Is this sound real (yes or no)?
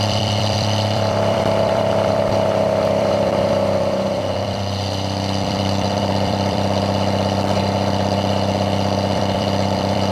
no